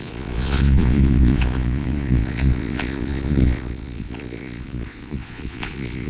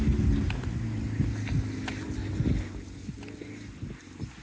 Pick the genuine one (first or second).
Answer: second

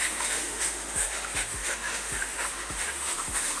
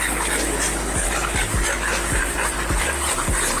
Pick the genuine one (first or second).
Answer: second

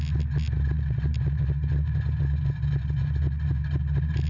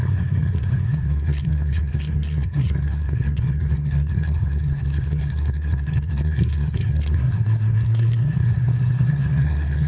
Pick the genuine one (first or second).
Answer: first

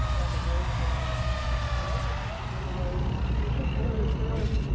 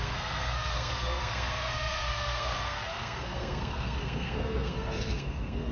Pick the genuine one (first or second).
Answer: first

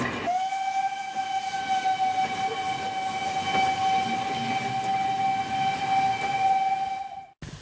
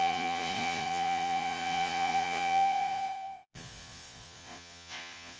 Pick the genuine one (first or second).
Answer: first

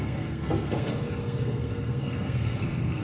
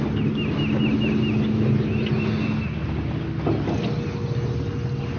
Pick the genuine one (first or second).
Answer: second